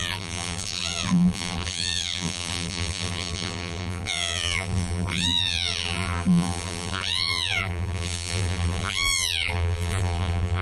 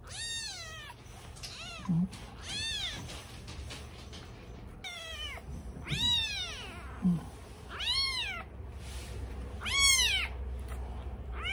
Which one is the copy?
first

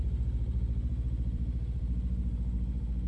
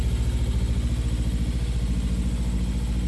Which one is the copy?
first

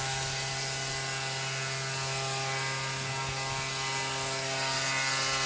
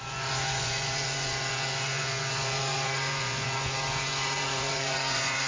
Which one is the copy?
second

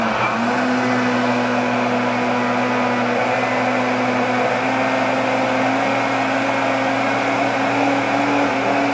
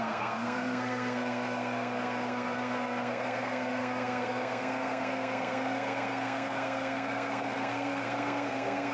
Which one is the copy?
second